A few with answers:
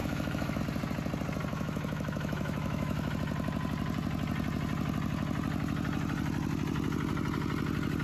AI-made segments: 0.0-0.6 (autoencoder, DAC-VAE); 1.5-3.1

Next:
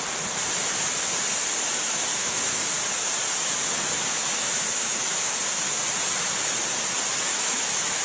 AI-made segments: 2.1-2.6 (autoencoder, DAC-VAE); 4.1-5.3; 7.3-8.0